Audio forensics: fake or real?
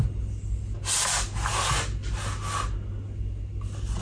real